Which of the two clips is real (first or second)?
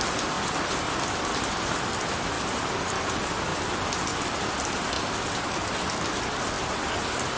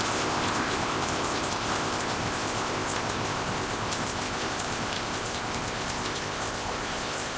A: first